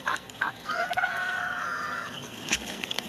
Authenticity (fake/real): fake